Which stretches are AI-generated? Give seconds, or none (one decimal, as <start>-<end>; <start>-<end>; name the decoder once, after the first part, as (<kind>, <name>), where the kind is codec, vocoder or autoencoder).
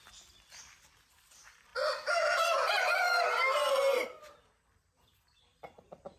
none